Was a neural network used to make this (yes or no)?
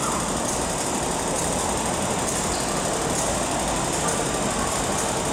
no